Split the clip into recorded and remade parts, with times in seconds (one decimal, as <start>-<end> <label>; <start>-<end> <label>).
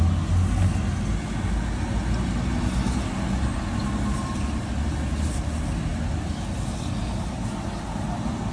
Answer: 0.0-8.5 recorded